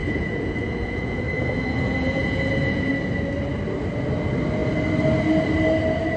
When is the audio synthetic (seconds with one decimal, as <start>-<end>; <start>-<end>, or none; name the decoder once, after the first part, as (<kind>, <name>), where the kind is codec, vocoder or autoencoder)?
0.0-2.9 (vocoder, Vocos)